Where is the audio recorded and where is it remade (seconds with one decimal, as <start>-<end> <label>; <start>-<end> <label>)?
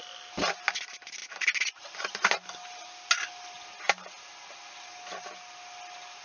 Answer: 0.0-6.2 recorded